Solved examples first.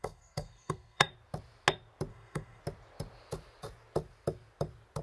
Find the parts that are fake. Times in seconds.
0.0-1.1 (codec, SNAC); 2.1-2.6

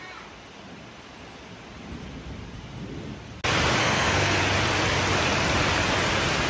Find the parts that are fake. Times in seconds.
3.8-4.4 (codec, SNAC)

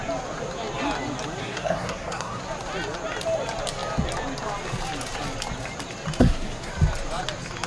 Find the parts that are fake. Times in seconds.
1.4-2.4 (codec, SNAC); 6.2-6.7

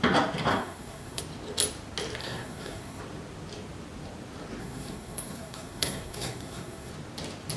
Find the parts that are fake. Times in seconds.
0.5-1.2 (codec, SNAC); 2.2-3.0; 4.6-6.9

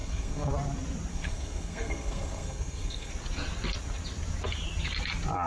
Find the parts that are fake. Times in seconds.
0.0-0.5 (codec, SNAC); 1.1-3.1

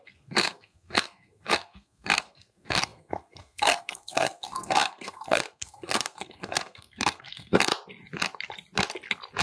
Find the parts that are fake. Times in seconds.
0.0-7.7 (codec, SNAC)

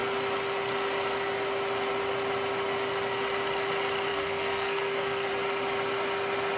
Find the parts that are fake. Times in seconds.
4.1-5.3 (codec, SNAC)